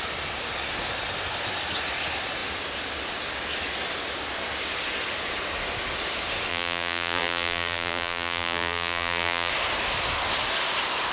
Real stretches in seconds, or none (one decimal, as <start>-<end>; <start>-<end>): 0.0-6.5; 9.5-11.1